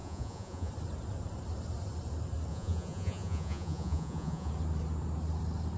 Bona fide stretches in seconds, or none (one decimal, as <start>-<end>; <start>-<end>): 0.7-2.5; 4.5-5.8